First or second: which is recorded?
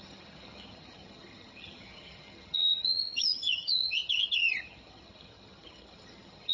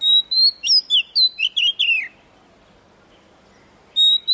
second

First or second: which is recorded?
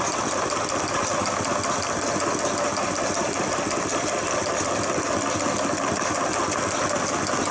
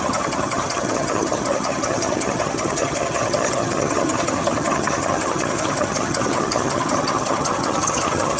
first